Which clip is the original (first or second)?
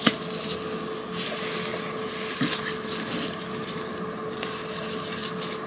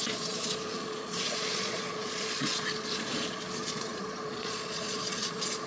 first